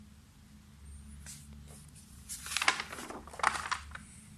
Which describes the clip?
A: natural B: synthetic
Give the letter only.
A